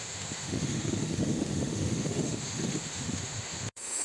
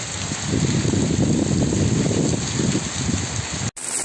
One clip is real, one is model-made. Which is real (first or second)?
second